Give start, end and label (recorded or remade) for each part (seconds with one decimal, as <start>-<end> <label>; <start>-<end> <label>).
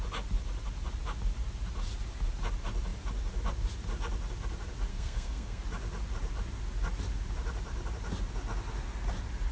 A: 0.0-4.9 recorded; 4.9-5.6 remade; 5.6-9.5 recorded